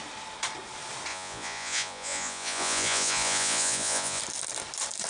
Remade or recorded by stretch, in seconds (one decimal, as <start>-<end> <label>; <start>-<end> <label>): 0.0-1.1 recorded; 1.1-4.2 remade; 4.2-5.1 recorded